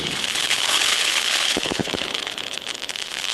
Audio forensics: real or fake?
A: fake